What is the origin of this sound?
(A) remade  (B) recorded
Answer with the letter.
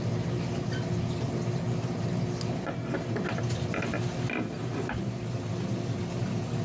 B